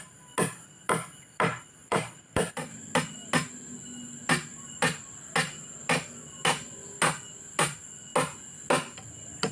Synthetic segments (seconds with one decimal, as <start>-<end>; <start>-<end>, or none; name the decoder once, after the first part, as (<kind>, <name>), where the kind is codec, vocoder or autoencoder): 1.8-2.5 (vocoder, BigVGAN v2)